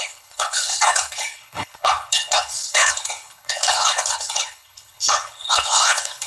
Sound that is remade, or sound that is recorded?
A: remade